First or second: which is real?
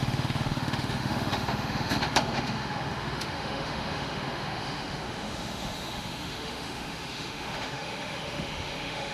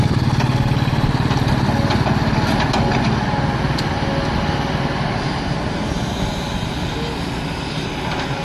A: second